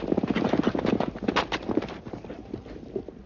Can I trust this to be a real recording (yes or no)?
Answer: yes